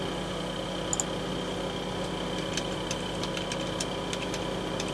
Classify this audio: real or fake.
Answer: real